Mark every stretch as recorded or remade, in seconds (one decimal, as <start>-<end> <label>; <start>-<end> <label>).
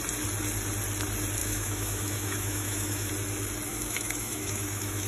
0.0-1.4 recorded; 1.4-3.1 remade; 3.1-3.7 recorded; 3.7-5.1 remade